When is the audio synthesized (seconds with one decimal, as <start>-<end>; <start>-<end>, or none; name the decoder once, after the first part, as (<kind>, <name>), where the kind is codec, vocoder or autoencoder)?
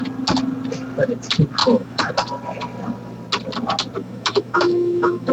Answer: 1.6-2.1 (autoencoder, DAC-VAE); 4.0-5.3